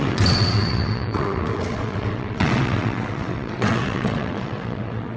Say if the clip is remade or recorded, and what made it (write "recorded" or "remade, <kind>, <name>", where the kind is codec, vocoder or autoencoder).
remade, vocoder, WaveNeXt